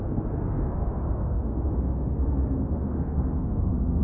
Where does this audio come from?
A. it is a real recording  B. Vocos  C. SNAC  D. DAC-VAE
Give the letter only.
C